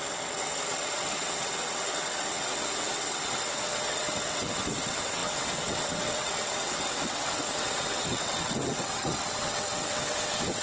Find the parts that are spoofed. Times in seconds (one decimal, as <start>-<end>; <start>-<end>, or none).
0.0-10.6